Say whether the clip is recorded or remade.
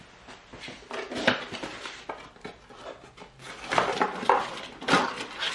recorded